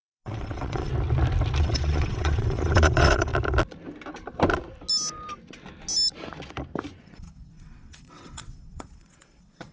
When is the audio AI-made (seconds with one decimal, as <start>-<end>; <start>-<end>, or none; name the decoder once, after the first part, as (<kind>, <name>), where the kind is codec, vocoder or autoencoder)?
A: 0.0-0.9 (vocoder, WaveNeXt); 1.6-3.3; 7.0-9.7